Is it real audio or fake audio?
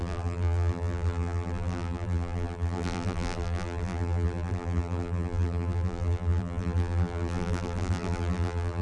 fake